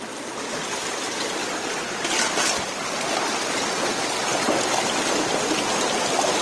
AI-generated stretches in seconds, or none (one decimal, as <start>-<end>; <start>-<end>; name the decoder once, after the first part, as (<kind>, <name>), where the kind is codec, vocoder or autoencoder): 1.4-2.6 (vocoder, BigVGAN v2); 4.3-5.5